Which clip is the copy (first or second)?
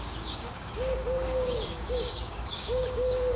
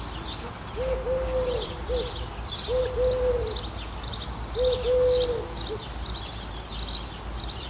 first